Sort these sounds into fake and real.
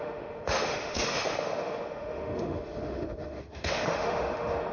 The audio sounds fake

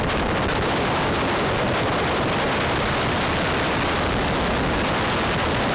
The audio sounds real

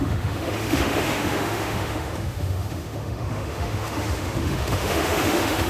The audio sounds fake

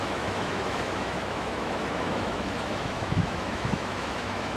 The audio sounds fake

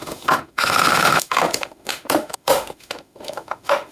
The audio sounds fake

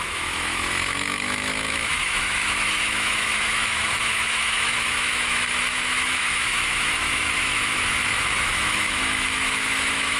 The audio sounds fake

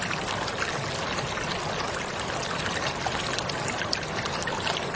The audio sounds real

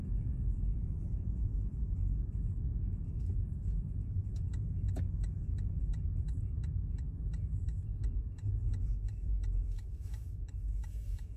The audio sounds fake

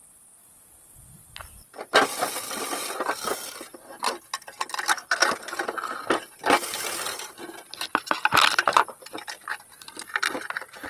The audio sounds real